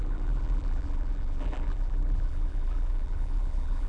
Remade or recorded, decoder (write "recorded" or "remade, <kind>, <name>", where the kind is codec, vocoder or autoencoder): remade, vocoder, BigVGAN v2